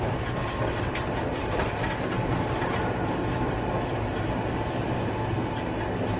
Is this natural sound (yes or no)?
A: yes